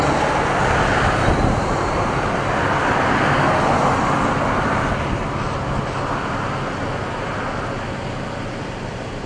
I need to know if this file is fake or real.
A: real